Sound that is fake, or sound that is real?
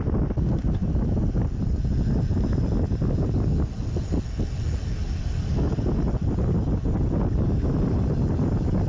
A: real